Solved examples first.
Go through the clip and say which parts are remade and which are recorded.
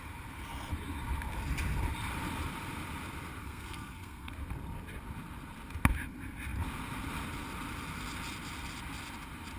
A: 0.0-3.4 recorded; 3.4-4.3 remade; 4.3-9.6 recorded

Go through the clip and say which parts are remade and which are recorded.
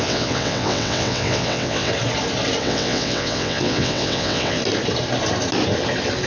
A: 0.0-1.9 remade; 1.9-2.6 recorded; 2.6-4.6 remade; 4.6-6.3 recorded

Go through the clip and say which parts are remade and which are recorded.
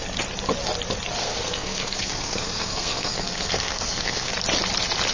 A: 0.0-1.2 recorded; 1.2-4.3 remade; 4.3-5.1 recorded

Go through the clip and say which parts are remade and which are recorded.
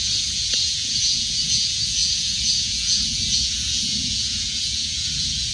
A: 0.0-5.5 remade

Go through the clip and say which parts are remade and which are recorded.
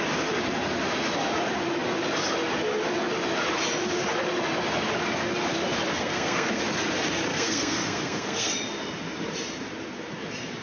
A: 0.0-5.9 recorded; 5.9-6.6 remade; 6.6-7.3 recorded; 7.3-8.5 remade; 8.5-10.6 recorded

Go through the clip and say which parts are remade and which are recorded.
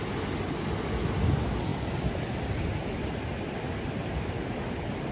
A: 0.0-5.1 recorded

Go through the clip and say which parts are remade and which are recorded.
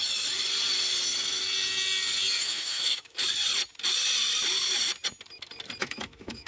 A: 0.0-2.4 recorded; 2.4-3.1 remade; 3.1-5.8 recorded; 5.8-6.5 remade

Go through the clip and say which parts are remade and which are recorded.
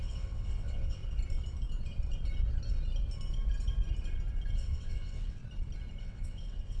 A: 0.0-1.0 remade; 1.0-4.5 recorded; 4.5-5.4 remade; 5.4-6.0 recorded; 6.0-6.8 remade